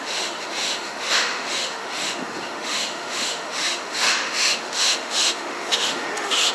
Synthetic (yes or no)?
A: yes